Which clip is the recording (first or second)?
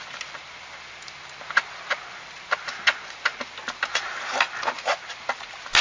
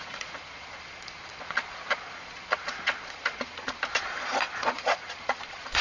first